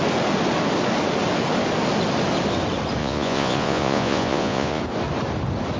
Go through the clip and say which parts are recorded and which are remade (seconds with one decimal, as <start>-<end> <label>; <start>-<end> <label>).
0.0-3.0 recorded; 3.0-4.8 remade; 4.8-5.8 recorded